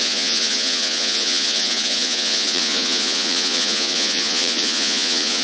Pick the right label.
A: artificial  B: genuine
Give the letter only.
A